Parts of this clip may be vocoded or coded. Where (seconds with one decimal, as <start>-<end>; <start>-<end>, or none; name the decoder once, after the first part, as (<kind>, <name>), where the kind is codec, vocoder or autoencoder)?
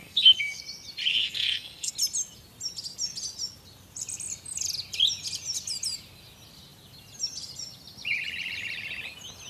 0.0-0.6 (codec, SNAC); 1.1-1.9